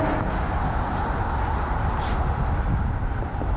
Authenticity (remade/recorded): recorded